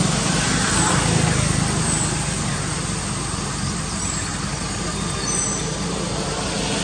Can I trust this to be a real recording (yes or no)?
yes